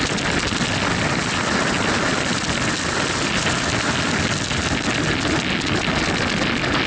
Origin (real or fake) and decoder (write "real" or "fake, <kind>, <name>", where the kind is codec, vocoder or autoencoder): real